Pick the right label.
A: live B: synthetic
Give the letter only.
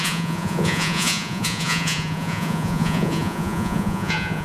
B